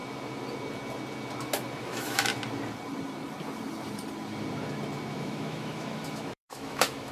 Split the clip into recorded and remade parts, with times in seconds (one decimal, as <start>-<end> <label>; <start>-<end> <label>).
0.0-1.8 recorded; 1.8-2.3 remade; 2.3-5.1 recorded; 5.1-7.1 remade

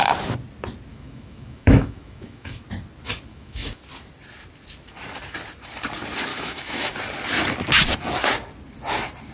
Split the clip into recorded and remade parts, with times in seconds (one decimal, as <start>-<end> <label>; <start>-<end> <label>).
0.0-0.9 recorded; 0.9-2.6 remade; 2.6-3.3 recorded; 3.3-3.8 remade; 3.8-6.3 recorded; 6.3-6.9 remade; 6.9-9.3 recorded

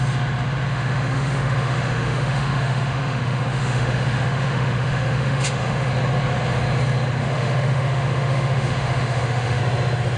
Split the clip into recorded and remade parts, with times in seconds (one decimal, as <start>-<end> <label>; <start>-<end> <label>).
0.0-0.7 recorded; 0.7-5.9 remade; 5.9-7.2 recorded; 7.2-9.6 remade; 9.6-10.2 recorded